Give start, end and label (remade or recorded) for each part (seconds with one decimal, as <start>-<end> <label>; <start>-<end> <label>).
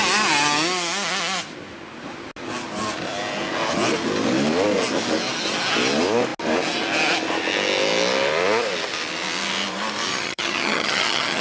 0.0-10.1 recorded; 10.1-11.4 remade